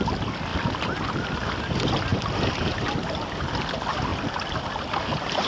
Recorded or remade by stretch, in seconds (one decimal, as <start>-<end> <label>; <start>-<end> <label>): 0.0-5.5 recorded